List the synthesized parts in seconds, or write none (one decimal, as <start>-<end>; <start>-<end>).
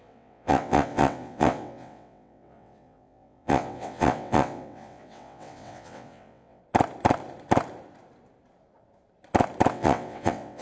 0.0-6.6; 9.7-10.6